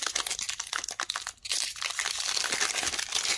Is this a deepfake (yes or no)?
no